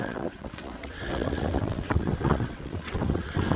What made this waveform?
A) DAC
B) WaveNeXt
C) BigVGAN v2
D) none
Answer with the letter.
B